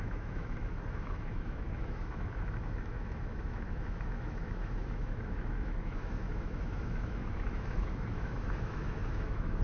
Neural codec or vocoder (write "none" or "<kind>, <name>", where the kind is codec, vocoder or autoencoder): autoencoder, DAC-VAE